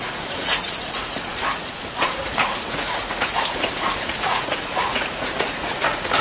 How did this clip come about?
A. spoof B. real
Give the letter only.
A